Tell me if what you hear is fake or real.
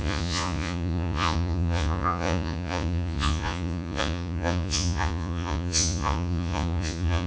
fake